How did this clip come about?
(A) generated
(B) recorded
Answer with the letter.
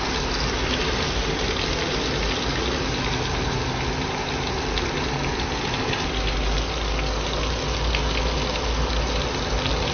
B